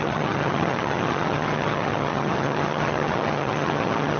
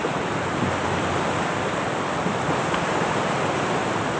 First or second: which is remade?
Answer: first